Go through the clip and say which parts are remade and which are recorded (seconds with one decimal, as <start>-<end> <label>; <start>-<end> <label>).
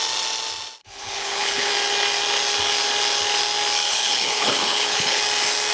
0.0-0.8 recorded; 0.8-1.7 remade; 1.7-3.9 recorded; 3.9-5.2 remade; 5.2-5.7 recorded